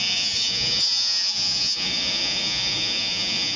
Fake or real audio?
fake